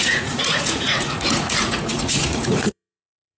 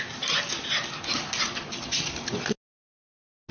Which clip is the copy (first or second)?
first